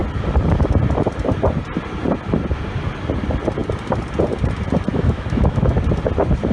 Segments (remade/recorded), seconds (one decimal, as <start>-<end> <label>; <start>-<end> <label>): 0.0-4.9 recorded; 4.9-5.6 remade; 5.6-6.5 recorded